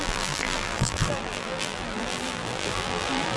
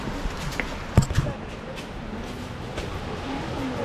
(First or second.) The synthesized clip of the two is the first